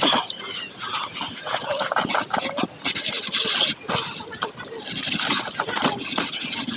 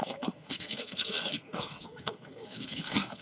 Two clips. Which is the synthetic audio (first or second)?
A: second